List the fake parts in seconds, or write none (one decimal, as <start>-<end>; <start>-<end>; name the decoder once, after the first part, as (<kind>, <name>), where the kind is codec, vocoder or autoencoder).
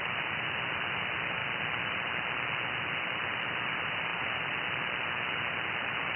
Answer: 1.4-2.5 (vocoder, BigVGAN v2)